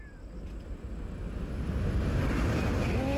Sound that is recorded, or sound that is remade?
recorded